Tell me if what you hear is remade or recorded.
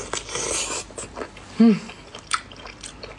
recorded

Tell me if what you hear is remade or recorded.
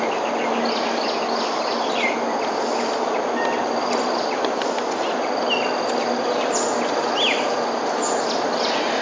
recorded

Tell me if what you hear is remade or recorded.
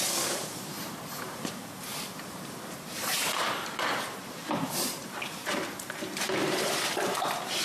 remade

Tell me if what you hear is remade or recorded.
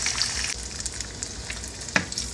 recorded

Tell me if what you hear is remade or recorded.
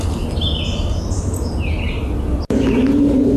recorded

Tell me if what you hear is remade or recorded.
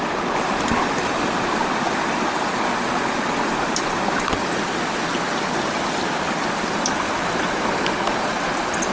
recorded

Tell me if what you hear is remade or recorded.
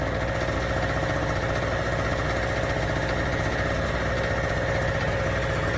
recorded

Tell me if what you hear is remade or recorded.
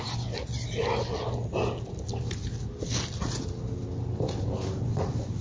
recorded